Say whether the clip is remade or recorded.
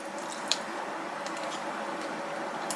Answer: remade